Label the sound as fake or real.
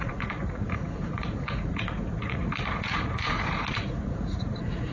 fake